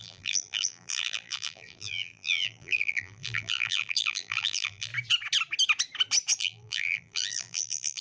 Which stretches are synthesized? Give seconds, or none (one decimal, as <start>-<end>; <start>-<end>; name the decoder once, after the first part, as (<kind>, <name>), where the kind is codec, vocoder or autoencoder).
0.0-4.9 (vocoder, BigVGAN v2); 6.4-8.0